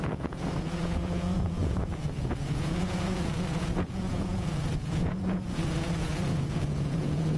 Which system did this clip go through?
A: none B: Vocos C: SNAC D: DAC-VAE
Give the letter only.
B